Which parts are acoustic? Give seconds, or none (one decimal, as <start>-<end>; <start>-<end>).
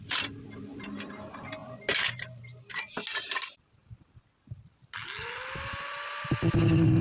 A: 0.0-7.0